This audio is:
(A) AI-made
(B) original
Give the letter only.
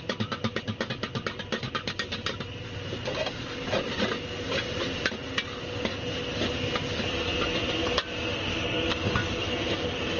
B